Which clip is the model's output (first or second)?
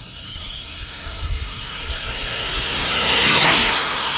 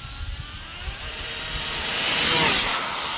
first